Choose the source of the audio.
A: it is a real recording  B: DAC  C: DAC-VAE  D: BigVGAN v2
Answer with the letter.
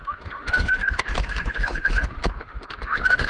C